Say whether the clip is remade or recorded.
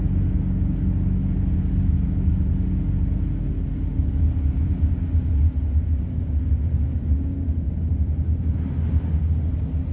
recorded